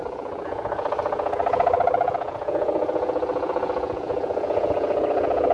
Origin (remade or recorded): remade